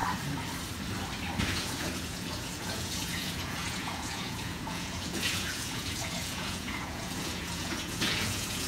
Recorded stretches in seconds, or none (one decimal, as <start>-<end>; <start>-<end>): 0.0-1.4